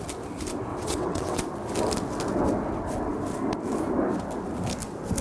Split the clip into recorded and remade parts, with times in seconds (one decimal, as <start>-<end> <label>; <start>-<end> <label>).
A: 0.0-0.7 recorded; 0.7-1.4 remade; 1.4-5.2 recorded